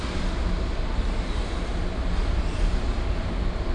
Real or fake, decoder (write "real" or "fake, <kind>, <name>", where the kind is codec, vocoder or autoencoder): real